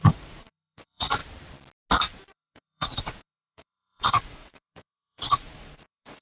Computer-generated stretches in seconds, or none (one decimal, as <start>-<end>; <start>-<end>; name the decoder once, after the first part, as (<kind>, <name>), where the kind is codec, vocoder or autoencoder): 0.0-1.2 (vocoder, Vocos); 2.3-6.2